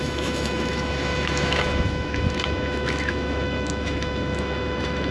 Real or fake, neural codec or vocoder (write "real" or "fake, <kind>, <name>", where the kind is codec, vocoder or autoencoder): fake, autoencoder, DAC-VAE